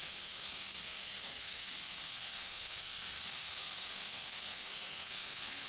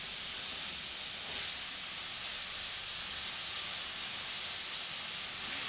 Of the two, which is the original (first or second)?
second